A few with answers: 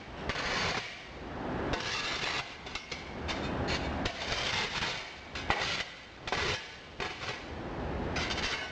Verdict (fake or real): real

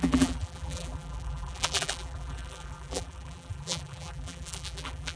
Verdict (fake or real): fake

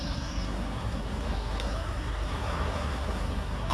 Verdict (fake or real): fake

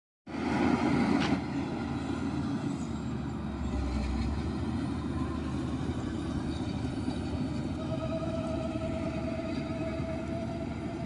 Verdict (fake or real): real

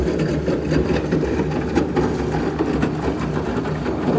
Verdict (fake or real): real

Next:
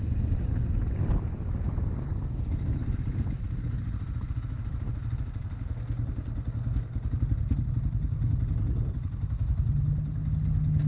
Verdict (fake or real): real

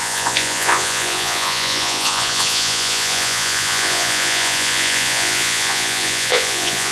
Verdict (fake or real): fake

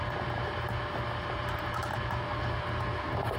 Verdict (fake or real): real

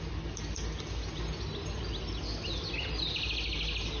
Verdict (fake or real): real